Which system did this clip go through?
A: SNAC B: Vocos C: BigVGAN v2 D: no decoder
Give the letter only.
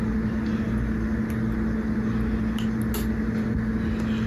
D